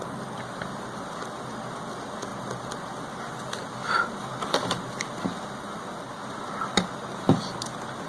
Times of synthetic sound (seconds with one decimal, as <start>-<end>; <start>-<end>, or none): none